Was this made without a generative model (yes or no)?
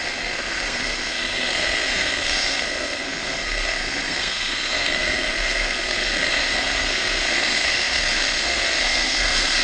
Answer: no